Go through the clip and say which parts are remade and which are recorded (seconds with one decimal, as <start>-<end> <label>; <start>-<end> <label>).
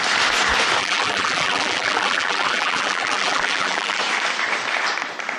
0.0-0.8 recorded; 0.8-4.0 remade; 4.0-5.4 recorded